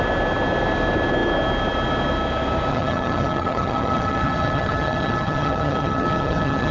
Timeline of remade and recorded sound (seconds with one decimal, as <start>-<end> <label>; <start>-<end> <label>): 0.0-2.7 recorded; 2.7-6.7 remade